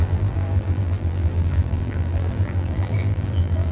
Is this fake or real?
fake